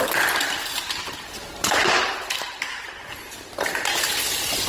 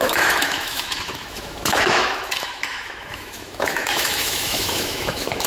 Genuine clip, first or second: first